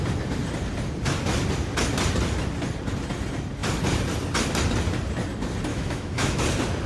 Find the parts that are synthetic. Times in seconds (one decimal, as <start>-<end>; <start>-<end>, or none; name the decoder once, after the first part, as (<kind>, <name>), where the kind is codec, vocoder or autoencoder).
5.7-6.4 (autoencoder, DAC-VAE)